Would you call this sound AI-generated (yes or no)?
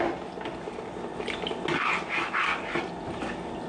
no